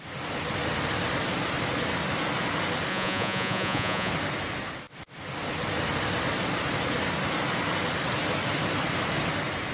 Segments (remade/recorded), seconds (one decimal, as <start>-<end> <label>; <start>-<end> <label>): 0.0-2.9 recorded; 2.9-4.1 remade; 4.1-9.7 recorded